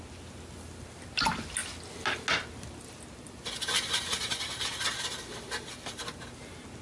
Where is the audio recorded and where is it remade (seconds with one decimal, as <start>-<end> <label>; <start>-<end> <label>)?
0.0-6.8 recorded